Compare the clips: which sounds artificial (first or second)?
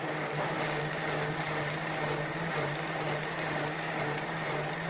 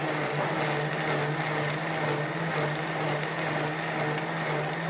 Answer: first